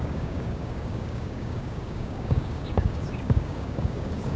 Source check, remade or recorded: remade